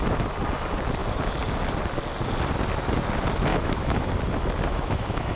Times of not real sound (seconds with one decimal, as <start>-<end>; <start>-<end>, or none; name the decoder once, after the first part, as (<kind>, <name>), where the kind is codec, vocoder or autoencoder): 3.5-4.1 (autoencoder, DAC-VAE); 4.7-5.4